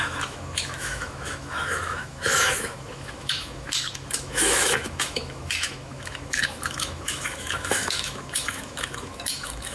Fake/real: fake